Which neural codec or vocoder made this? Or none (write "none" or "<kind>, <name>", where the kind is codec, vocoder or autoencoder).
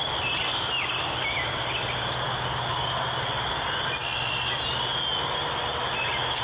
none